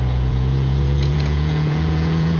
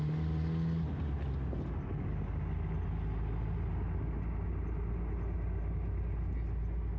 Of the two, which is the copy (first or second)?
first